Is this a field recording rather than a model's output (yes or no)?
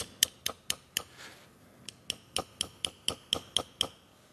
yes